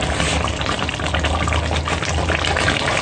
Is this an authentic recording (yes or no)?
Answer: yes